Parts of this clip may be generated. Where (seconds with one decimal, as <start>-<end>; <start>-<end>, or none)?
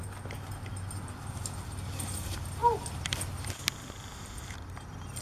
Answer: none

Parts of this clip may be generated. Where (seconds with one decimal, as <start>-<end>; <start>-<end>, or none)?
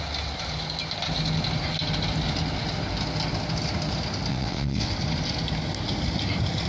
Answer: 4.3-4.9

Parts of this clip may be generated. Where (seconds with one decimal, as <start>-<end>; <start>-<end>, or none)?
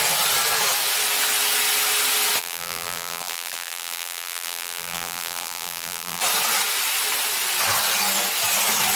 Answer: 2.4-6.2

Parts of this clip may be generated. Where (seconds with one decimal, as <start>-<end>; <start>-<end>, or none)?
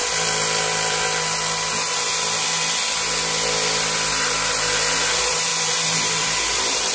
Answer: 4.1-5.5; 6.1-6.9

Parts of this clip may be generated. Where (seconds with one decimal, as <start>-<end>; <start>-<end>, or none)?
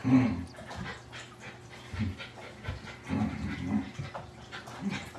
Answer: none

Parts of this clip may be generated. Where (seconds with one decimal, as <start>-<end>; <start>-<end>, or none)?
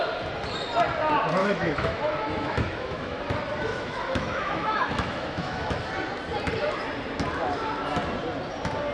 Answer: 1.4-3.2; 3.7-5.7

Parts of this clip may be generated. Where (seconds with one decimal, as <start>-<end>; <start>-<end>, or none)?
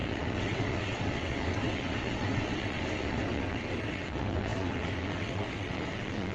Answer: 0.0-6.3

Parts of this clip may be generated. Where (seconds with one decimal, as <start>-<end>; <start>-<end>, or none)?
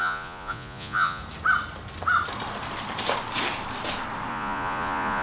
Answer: 0.0-1.2; 4.3-5.2